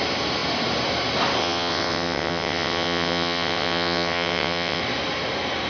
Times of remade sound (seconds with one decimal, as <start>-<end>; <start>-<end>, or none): 1.4-4.8